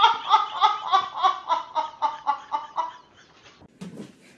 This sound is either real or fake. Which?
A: real